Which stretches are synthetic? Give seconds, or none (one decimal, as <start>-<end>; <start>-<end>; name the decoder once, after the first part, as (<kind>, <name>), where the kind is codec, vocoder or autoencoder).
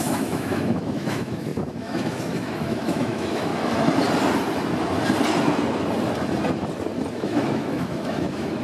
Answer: 0.0-3.5 (autoencoder, DAC-VAE); 7.1-8.6